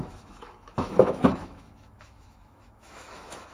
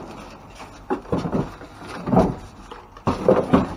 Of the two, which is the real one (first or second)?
second